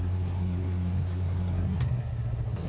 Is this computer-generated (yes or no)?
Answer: yes